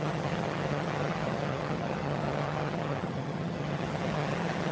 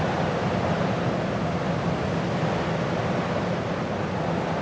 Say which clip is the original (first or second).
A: second